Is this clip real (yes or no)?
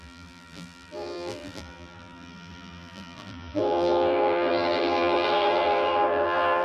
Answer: no